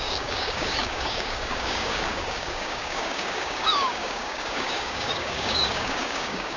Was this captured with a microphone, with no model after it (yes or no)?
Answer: no